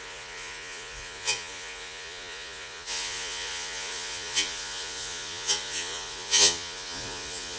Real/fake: fake